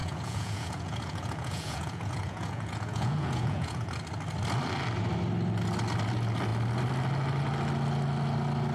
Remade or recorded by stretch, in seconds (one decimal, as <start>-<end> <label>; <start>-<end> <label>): 0.0-3.9 remade; 3.9-8.7 recorded